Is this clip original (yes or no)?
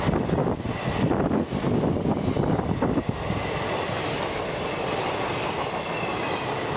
yes